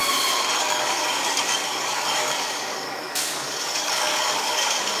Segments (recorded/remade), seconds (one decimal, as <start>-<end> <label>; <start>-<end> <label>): 0.0-0.6 recorded; 0.6-5.0 remade